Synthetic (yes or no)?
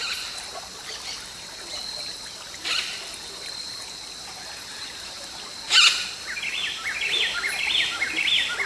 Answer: no